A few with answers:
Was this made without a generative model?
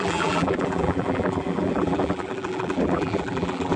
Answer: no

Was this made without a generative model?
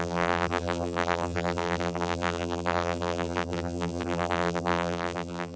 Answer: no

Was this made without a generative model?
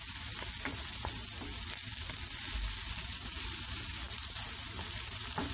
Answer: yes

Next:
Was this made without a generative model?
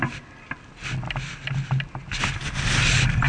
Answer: yes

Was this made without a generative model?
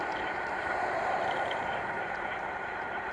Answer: no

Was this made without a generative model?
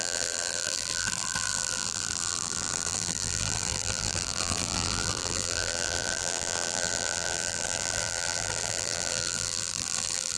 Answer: no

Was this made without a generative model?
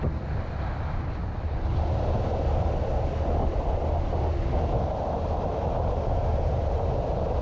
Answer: yes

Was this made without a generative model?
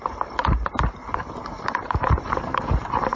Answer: no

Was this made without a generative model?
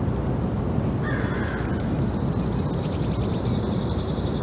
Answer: yes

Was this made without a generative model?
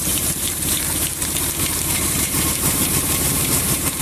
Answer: no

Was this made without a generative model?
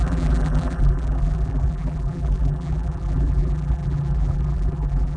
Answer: no